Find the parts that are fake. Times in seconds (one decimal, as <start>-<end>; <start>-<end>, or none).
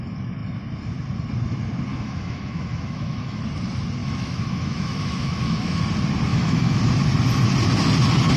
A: 1.9-3.4; 4.0-5.8; 6.3-6.8